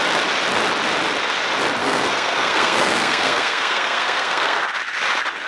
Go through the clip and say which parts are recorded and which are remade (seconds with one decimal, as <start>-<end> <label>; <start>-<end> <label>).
0.0-1.8 recorded; 1.8-4.6 remade; 4.6-5.5 recorded